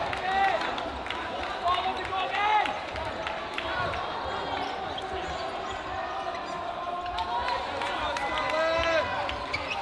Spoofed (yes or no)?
no